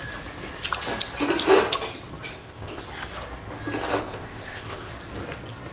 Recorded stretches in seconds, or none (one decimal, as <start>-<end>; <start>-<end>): 0.0-2.3; 2.8-4.0; 4.9-5.7